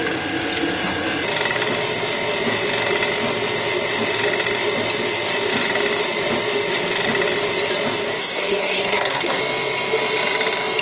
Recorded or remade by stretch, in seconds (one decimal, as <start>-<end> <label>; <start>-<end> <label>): 0.0-8.2 recorded; 8.2-9.4 remade; 9.4-10.8 recorded